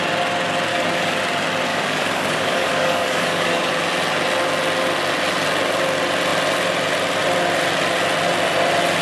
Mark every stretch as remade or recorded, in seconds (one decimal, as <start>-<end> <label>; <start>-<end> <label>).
0.0-0.7 recorded; 0.7-1.2 remade; 1.2-1.7 recorded; 1.7-3.7 remade; 3.7-9.0 recorded